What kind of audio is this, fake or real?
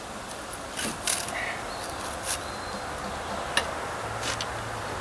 real